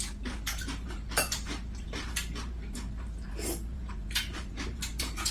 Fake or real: fake